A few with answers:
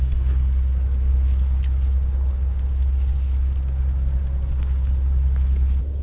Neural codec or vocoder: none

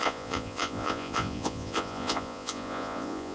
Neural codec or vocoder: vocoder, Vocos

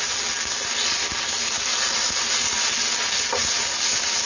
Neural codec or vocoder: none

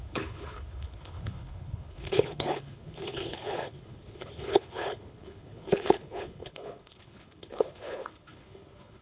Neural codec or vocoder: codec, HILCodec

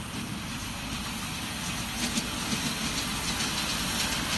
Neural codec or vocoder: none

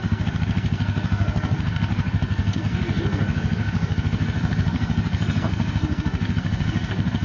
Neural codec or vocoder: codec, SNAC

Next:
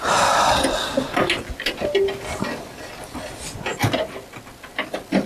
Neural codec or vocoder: none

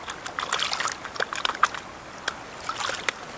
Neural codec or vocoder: none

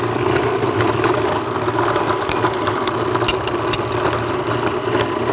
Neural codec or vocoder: none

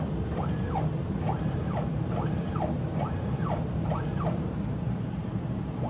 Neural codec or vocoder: vocoder, BigVGAN v2